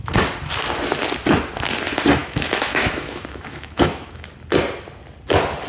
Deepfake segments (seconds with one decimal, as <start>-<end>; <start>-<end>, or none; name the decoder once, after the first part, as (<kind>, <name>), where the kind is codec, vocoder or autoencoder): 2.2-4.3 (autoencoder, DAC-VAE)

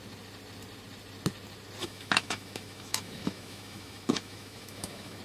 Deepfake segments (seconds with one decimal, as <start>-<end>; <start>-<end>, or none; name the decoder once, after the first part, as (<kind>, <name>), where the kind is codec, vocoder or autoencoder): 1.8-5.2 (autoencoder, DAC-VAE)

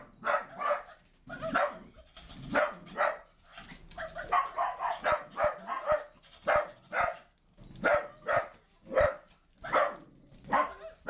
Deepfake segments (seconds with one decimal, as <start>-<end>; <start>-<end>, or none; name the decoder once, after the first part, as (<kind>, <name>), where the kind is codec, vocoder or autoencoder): none